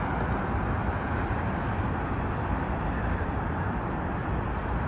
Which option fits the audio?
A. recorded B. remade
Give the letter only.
A